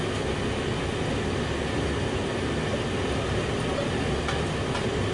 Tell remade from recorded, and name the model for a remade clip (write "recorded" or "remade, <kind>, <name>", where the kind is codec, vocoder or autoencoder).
recorded